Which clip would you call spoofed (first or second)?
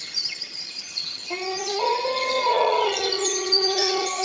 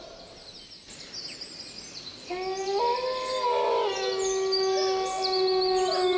first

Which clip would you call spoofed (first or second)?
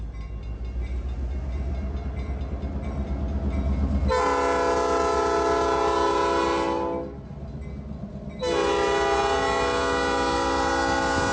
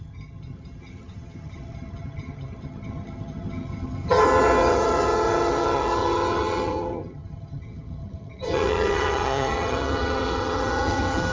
second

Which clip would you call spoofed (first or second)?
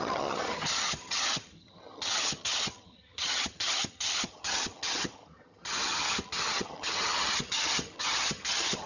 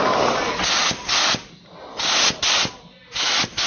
first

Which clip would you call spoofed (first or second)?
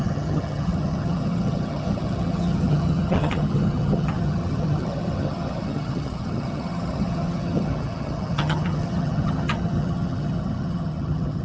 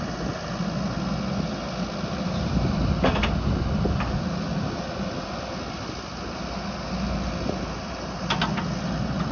first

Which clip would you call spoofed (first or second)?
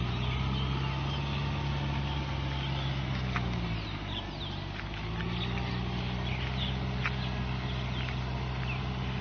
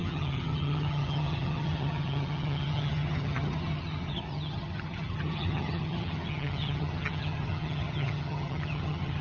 second